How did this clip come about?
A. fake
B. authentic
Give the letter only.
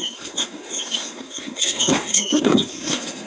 A